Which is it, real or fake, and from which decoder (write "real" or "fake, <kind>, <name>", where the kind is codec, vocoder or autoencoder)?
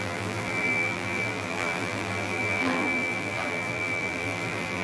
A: fake, vocoder, BigVGAN v2